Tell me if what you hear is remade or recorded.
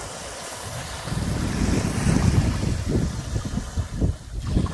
recorded